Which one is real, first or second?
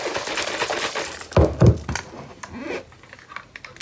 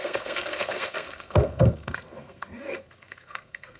first